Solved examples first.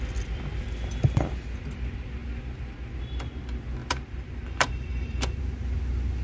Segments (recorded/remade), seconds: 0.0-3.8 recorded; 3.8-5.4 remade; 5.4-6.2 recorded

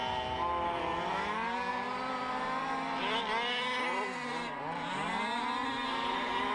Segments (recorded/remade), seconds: 0.0-6.5 recorded

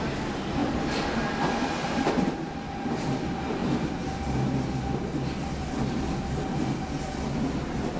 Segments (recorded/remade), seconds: 0.0-8.0 recorded